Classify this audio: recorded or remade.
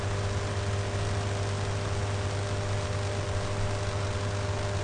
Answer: recorded